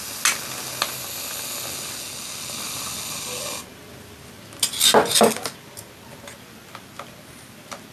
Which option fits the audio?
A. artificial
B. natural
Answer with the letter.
B